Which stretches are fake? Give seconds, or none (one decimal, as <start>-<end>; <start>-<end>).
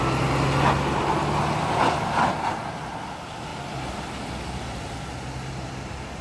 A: none